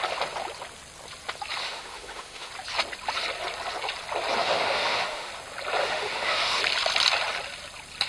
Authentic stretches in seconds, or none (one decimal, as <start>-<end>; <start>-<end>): 0.0-1.6; 2.5-4.4; 5.3-5.8; 6.6-8.1